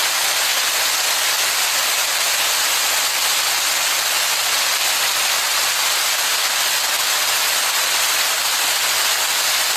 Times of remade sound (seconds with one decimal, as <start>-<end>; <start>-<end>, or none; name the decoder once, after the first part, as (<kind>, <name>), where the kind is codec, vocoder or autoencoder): none